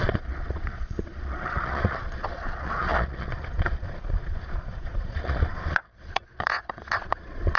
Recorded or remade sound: remade